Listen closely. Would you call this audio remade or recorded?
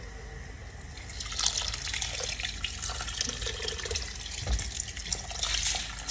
recorded